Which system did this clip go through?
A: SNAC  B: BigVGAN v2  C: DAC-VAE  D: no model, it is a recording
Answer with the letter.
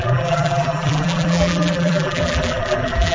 B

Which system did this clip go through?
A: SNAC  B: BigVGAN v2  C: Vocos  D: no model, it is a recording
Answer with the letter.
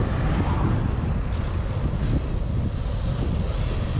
D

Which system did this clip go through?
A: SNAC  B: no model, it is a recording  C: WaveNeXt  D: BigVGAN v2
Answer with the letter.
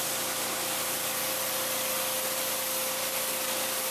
B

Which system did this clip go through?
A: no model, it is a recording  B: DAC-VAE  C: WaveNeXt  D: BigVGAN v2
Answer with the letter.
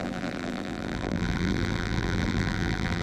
D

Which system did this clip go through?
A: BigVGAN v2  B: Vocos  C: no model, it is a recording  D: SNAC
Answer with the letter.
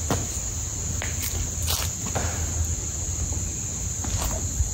C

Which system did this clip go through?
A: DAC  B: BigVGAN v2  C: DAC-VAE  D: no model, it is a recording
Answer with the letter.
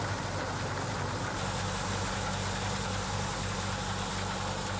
D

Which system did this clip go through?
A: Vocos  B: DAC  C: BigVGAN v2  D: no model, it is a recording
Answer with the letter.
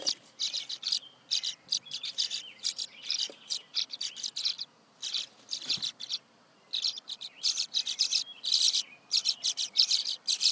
C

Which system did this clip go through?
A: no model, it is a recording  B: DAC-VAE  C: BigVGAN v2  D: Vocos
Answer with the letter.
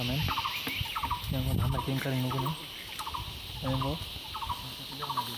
A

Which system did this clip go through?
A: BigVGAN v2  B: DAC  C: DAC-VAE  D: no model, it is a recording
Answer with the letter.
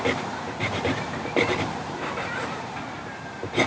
A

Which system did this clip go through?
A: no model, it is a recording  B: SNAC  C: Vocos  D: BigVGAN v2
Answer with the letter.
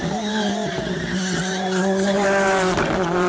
D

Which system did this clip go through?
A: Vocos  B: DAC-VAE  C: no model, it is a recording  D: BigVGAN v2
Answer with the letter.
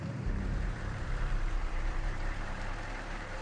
D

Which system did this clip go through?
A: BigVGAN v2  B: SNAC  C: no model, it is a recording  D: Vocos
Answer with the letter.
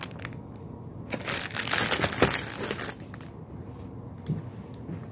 C